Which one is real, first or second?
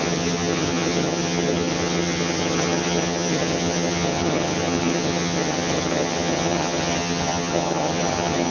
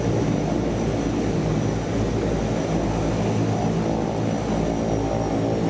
second